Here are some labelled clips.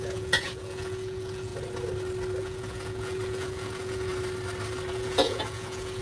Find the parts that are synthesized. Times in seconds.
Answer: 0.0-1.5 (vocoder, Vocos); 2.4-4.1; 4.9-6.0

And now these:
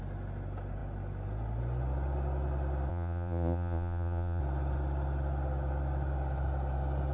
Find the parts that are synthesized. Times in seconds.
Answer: 2.9-4.4 (vocoder, Vocos)

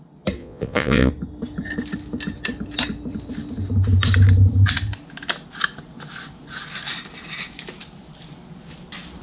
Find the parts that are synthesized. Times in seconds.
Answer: 0.4-1.1 (vocoder, Vocos)

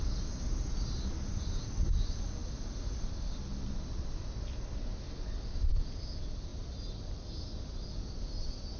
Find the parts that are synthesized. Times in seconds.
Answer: none

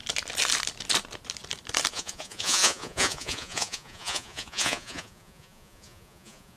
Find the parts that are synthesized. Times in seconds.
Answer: 1.9-6.6 (vocoder, Vocos)

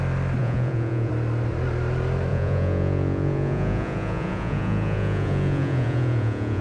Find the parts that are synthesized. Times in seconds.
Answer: 0.4-1.1 (vocoder, Vocos); 2.3-6.6

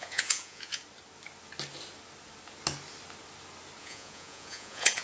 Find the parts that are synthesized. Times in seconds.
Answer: 0.0-0.8 (vocoder, Vocos); 3.8-5.0

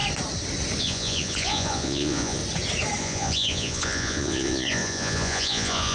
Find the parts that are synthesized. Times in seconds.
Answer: 0.8-2.4 (vocoder, Vocos); 3.0-5.9